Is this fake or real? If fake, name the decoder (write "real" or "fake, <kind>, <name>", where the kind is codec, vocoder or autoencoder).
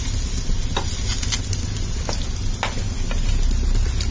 real